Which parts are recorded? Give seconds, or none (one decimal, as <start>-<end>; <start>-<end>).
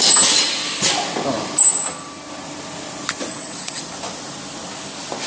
0.0-3.3; 3.8-5.3